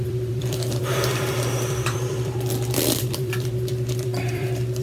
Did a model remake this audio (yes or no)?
yes